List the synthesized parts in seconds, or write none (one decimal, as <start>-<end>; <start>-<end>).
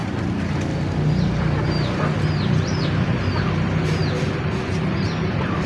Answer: none